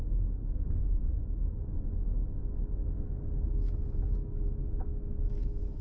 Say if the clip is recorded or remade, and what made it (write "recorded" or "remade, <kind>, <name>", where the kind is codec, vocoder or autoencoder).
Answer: remade, autoencoder, DAC-VAE